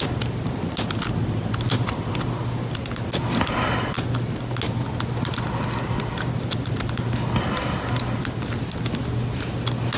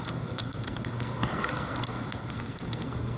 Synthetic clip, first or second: second